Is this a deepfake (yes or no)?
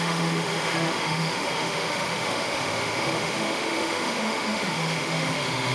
yes